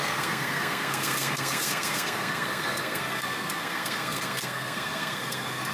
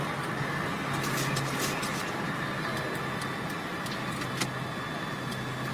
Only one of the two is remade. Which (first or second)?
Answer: first